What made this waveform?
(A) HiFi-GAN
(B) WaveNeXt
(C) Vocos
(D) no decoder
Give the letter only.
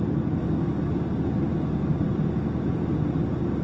D